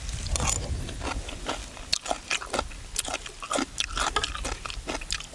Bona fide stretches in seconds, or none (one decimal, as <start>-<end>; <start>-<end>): 0.0-5.3